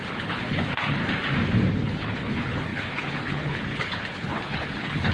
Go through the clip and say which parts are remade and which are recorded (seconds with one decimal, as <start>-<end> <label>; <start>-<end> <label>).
0.0-1.0 remade; 1.0-1.7 recorded; 1.7-5.1 remade